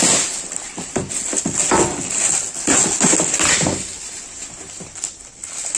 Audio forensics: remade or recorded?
recorded